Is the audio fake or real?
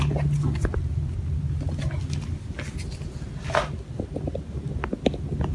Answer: real